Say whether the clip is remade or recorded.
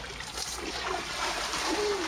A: remade